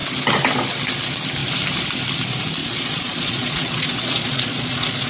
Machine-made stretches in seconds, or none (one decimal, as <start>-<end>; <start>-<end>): 2.6-5.1